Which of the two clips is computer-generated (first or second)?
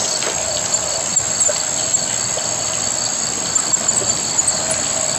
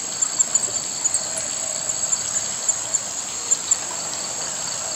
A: second